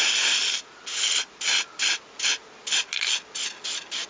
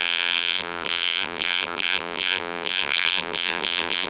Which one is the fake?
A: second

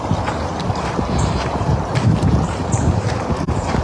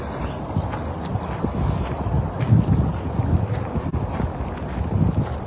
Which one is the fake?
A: first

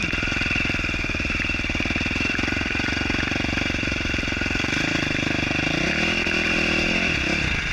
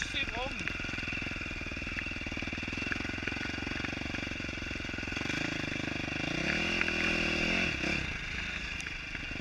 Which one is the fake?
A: first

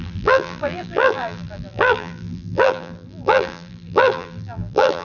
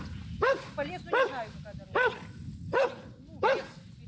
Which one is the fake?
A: first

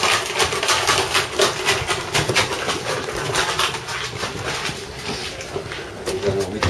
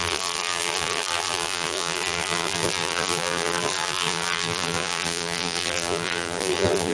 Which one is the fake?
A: second